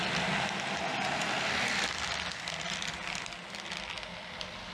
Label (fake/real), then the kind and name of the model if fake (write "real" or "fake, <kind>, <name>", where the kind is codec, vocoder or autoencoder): real